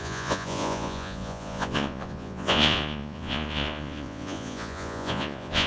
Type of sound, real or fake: fake